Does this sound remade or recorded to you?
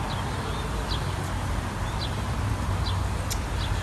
recorded